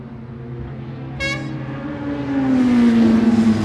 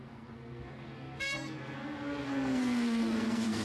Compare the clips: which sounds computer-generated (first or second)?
second